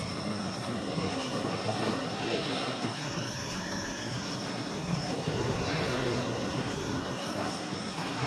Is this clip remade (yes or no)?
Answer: yes